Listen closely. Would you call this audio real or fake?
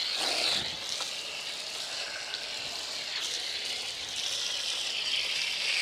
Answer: real